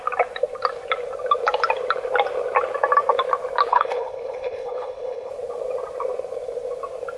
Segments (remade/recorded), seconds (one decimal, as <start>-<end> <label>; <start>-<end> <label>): 0.0-3.7 recorded; 3.7-5.3 remade; 5.3-7.2 recorded